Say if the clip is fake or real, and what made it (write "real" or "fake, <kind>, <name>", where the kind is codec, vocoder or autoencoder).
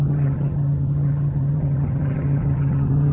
fake, vocoder, HiFi-GAN